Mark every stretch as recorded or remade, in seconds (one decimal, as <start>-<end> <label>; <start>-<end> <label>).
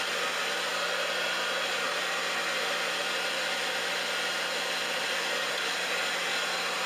0.0-6.9 recorded